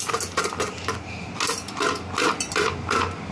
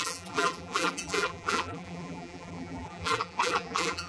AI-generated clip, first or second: second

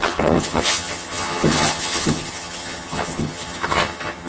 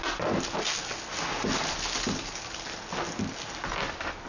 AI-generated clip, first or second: first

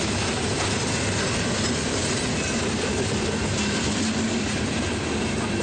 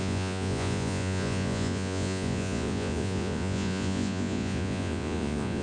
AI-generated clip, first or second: second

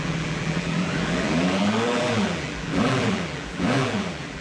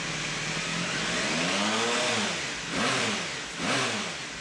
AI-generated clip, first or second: first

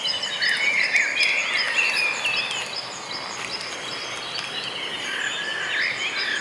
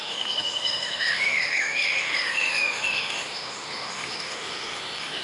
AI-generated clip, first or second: second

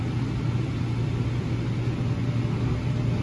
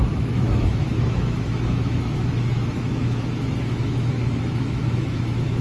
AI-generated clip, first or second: second